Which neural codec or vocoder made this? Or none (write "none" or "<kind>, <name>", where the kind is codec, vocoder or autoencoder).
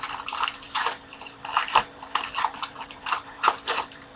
vocoder, BigVGAN v2